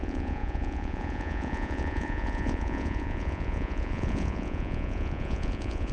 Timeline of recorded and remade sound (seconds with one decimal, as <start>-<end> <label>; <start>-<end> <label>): 0.0-5.9 remade